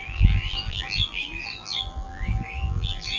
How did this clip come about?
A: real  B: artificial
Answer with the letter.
B